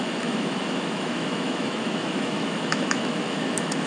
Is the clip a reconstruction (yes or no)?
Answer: yes